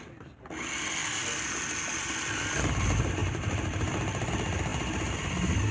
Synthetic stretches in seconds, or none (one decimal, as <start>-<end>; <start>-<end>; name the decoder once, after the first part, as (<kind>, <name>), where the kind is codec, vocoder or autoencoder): 1.0-1.5 (vocoder, BigVGAN v2); 4.7-5.7